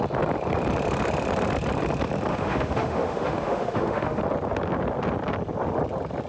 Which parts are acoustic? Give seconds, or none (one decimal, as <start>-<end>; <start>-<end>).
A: 0.0-2.3; 4.2-6.3